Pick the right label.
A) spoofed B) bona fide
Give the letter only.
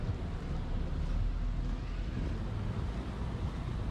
B